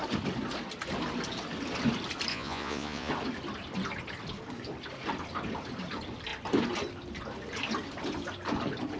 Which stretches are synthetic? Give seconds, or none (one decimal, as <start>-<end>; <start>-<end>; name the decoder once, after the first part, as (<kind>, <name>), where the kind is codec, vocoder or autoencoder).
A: 2.3-3.1 (vocoder, Vocos)